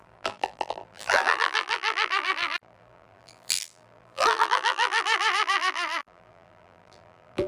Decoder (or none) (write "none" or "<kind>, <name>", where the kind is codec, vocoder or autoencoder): vocoder, BigVGAN v2